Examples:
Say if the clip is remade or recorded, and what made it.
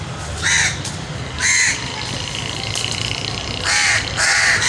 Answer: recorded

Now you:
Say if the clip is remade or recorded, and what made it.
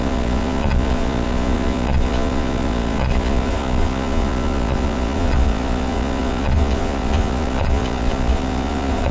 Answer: remade, vocoder, Vocos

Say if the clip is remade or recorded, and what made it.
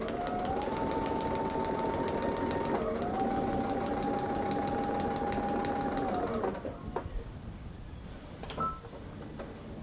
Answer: recorded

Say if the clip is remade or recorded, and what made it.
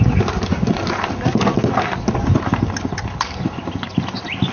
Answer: recorded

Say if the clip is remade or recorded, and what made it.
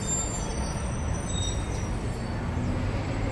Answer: recorded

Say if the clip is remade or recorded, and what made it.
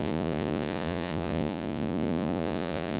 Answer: remade, vocoder, Vocos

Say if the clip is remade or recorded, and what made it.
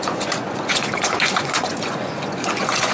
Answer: remade, vocoder, Vocos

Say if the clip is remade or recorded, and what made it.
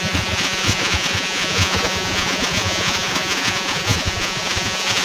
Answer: remade, vocoder, Vocos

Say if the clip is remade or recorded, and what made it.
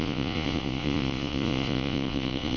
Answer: remade, vocoder, Vocos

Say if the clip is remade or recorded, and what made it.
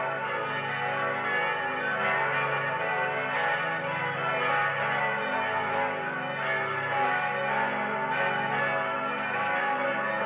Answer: recorded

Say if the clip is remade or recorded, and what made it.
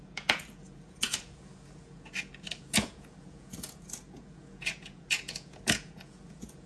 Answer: remade, vocoder, Vocos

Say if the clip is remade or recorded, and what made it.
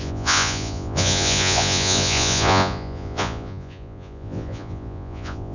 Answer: remade, vocoder, Vocos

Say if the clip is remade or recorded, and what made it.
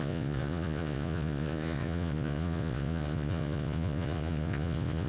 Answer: remade, vocoder, Vocos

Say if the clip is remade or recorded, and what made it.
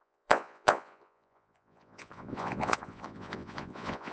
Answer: remade, vocoder, Vocos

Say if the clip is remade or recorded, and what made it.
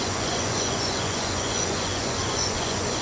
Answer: remade, vocoder, Vocos